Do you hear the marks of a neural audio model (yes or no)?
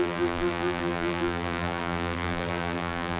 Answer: yes